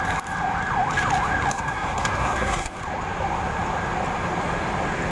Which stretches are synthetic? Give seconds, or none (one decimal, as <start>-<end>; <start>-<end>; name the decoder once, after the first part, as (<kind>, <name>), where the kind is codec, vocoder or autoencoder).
1.5-2.8 (codec, SNAC)